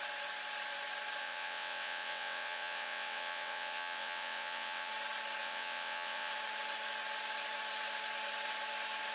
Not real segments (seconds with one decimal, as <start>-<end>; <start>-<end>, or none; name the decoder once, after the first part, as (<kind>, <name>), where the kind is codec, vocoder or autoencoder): 1.2-4.9 (vocoder, WaveNeXt); 5.4-6.3